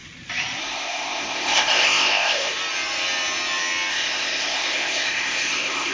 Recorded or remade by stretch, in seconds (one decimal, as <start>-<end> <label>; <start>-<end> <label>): 0.0-0.6 recorded; 0.6-2.6 remade; 2.6-3.9 recorded; 3.9-5.9 remade